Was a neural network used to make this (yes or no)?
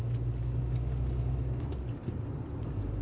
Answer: no